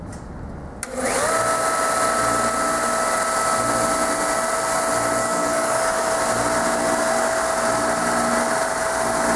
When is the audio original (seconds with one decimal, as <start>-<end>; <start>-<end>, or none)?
0.0-5.2; 6.1-9.4